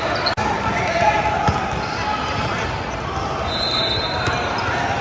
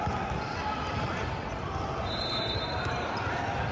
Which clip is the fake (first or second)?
second